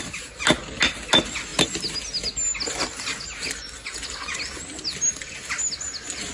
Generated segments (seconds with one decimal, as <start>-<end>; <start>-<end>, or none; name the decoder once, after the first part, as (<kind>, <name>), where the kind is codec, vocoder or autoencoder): none